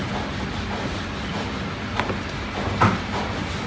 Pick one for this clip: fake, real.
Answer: real